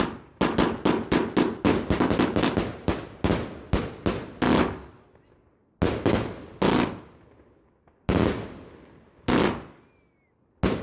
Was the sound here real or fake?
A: real